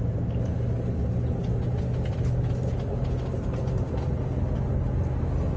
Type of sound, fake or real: real